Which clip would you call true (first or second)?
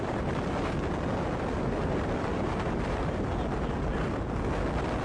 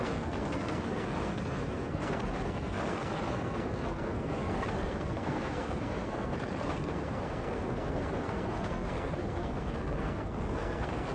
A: first